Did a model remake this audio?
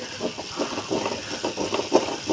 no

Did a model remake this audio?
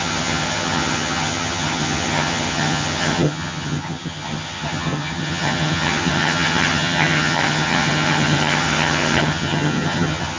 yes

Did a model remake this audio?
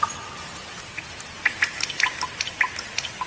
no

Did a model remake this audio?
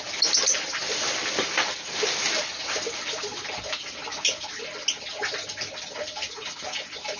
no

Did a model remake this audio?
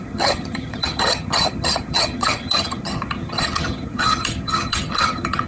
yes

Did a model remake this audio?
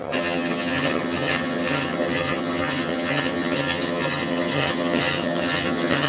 yes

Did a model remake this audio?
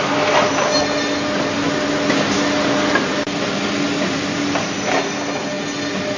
no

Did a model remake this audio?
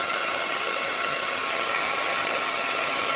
yes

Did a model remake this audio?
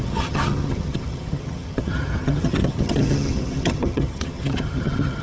yes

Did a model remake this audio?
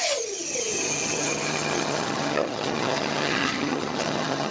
yes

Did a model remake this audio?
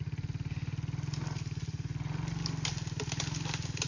no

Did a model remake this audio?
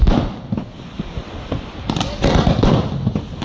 no